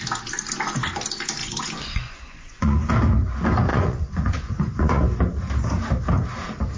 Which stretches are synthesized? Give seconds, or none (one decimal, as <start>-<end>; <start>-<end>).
1.4-2.9; 3.7-5.0